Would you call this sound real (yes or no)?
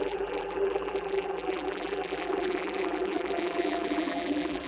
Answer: no